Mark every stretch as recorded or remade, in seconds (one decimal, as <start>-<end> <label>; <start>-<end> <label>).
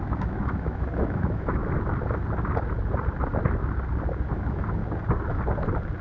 0.0-1.6 remade; 1.6-4.3 recorded; 4.3-4.8 remade; 4.8-6.0 recorded